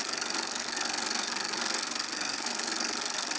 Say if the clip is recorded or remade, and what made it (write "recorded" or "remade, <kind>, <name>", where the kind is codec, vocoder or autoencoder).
remade, codec, SNAC